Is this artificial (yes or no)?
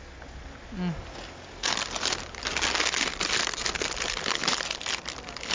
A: no